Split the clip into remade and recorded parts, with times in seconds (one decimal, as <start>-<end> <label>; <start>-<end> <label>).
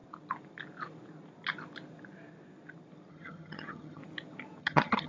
0.0-3.1 recorded; 3.1-4.0 remade; 4.0-4.6 recorded; 4.6-5.1 remade